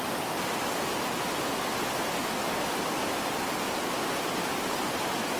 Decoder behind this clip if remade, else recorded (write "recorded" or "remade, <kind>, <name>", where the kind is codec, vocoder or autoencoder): recorded